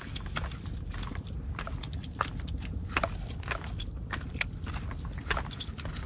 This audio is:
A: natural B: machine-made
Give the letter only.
A